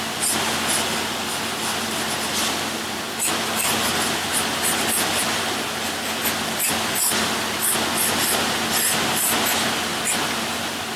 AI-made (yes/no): no